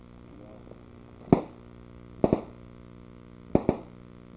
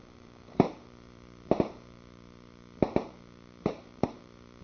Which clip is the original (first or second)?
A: first